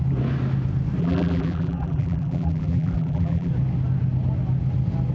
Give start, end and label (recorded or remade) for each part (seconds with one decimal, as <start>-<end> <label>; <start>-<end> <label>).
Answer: 0.0-1.0 recorded; 1.0-3.5 remade; 3.5-5.1 recorded